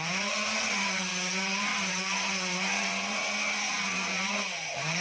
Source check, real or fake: fake